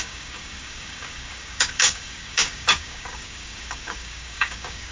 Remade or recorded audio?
remade